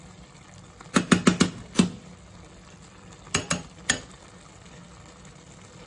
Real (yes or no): yes